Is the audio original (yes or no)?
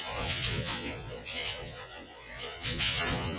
no